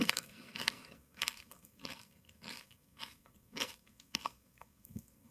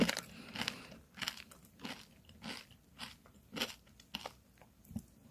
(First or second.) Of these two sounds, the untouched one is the second